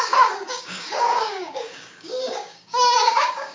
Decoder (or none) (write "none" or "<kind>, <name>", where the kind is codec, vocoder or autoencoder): codec, DAC